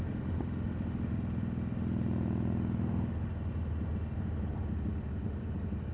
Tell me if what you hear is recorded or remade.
recorded